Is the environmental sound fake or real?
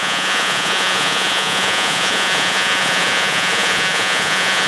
fake